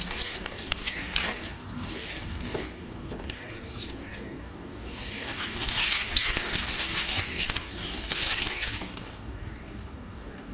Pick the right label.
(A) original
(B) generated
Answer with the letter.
B